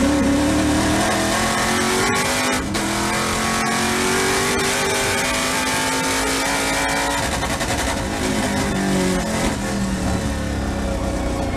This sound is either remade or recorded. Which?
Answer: recorded